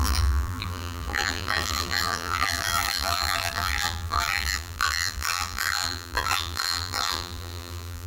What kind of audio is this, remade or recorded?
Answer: remade